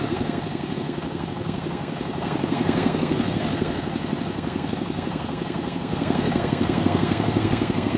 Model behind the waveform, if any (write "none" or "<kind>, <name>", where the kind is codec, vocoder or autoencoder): codec, SNAC